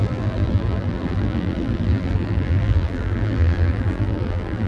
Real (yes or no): no